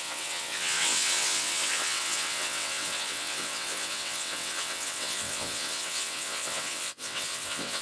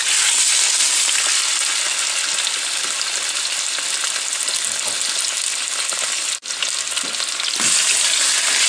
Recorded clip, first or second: second